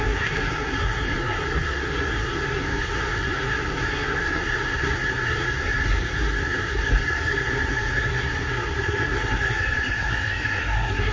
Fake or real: fake